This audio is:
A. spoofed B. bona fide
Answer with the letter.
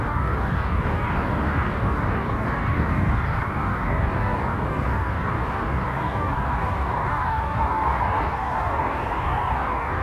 A